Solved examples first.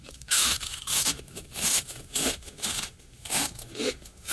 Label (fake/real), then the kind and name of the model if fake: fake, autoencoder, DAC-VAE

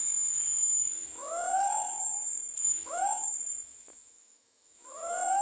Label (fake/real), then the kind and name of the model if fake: fake, autoencoder, DAC-VAE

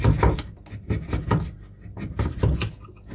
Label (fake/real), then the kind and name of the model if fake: real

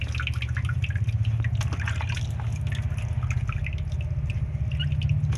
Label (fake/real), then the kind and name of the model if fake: real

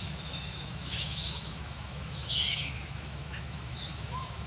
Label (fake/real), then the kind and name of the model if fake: fake, autoencoder, DAC-VAE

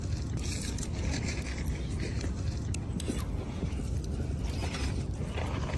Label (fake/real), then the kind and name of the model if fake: real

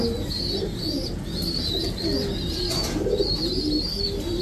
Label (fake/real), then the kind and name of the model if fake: real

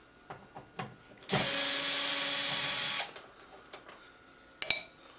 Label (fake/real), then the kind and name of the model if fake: real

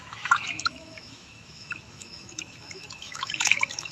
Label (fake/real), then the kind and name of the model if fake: fake, autoencoder, DAC-VAE